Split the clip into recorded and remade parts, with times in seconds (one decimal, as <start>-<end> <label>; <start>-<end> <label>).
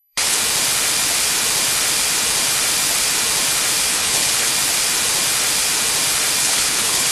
0.0-0.4 remade; 0.4-3.9 recorded; 3.9-4.5 remade; 4.5-6.4 recorded; 6.4-7.1 remade